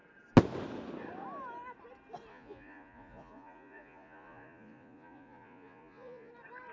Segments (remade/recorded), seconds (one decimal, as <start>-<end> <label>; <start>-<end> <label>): 0.0-2.3 recorded; 2.3-6.3 remade; 6.3-6.7 recorded